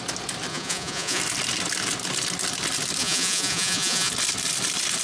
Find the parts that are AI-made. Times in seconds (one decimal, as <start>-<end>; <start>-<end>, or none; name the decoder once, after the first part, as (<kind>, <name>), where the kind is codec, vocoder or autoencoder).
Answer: 0.5-1.2 (vocoder, Vocos); 3.0-4.1